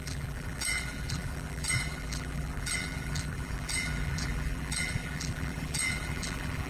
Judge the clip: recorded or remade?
remade